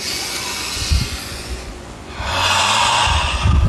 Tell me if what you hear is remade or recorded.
remade